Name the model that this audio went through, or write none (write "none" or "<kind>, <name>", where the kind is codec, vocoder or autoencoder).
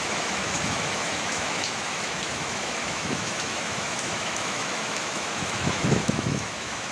autoencoder, DAC-VAE